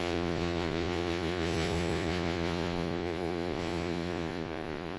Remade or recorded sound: remade